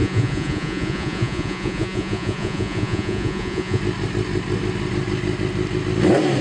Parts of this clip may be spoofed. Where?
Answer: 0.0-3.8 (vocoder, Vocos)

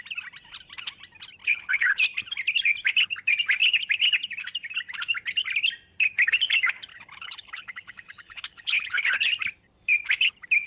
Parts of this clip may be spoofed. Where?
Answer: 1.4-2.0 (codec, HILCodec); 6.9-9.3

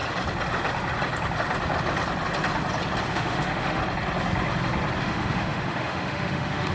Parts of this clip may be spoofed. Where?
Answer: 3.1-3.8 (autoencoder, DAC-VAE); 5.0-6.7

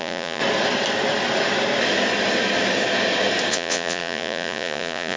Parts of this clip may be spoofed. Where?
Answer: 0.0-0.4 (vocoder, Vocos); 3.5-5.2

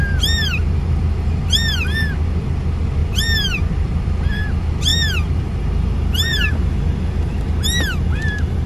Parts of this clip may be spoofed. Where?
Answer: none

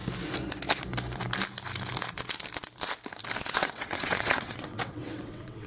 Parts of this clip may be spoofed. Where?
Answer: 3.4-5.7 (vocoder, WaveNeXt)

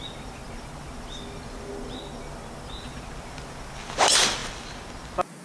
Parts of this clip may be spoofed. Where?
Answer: none